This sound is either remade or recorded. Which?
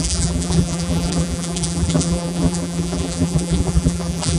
remade